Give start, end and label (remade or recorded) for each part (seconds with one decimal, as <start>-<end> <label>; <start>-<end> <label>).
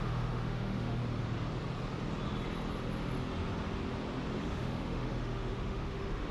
0.0-1.0 remade; 1.0-4.4 recorded; 4.4-6.3 remade